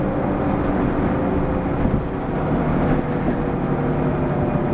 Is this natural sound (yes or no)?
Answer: yes